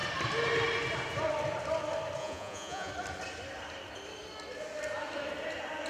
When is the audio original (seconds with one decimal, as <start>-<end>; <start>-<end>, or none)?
0.0-2.2; 2.9-5.9